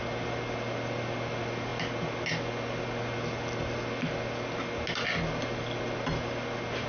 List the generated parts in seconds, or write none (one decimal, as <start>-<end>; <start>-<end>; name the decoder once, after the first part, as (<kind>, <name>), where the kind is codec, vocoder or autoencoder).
none

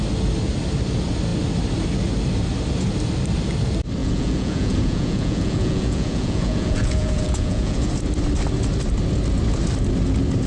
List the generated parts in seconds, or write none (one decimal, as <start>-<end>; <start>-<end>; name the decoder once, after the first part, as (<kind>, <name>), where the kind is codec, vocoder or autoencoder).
4.0-7.9 (vocoder, Vocos)